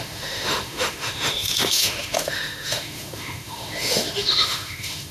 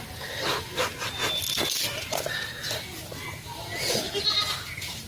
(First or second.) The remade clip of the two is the first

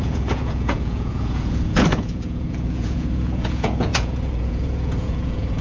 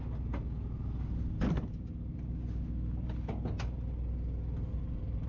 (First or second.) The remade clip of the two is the first